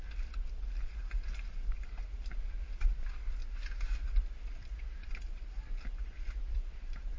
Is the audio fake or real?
real